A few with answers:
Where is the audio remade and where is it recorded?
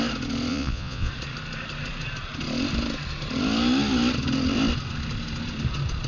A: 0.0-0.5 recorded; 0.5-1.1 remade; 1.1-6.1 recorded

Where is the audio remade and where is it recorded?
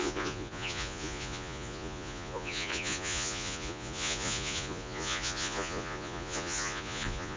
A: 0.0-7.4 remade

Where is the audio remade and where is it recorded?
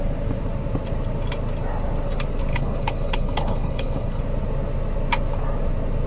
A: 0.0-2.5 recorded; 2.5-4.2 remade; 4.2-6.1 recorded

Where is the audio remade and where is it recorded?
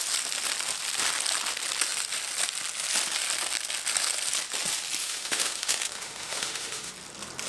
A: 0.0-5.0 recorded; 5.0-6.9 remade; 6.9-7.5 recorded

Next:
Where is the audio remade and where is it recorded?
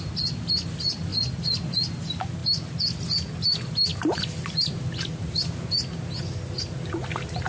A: 0.0-1.1 recorded; 1.1-1.6 remade; 1.6-3.9 recorded; 3.9-5.4 remade; 5.4-7.5 recorded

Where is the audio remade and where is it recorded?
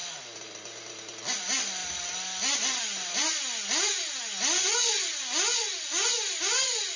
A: 0.0-7.0 recorded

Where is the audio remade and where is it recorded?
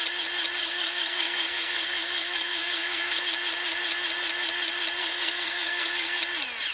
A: 0.0-0.6 recorded; 0.6-3.2 remade; 3.2-5.0 recorded; 5.0-6.2 remade; 6.2-6.7 recorded